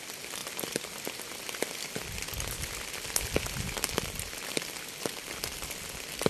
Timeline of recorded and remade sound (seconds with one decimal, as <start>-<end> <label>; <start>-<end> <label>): 0.0-6.3 recorded